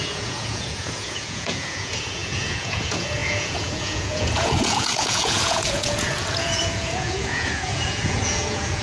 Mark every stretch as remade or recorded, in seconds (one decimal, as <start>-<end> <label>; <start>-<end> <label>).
0.0-8.8 remade